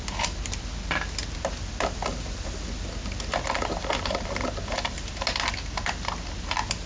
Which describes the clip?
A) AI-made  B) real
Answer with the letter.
B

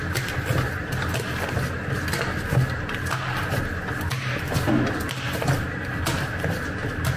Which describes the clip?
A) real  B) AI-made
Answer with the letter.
A